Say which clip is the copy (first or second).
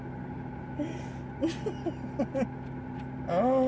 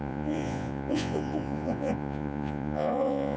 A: second